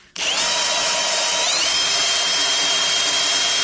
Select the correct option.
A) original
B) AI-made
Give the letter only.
A